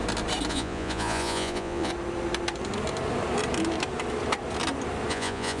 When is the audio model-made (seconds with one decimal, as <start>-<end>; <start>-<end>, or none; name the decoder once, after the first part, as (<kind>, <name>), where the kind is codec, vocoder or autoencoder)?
0.5-1.9 (vocoder, Vocos); 5.1-5.6